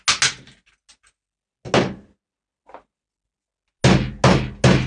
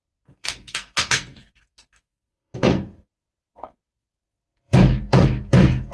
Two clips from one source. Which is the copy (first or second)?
second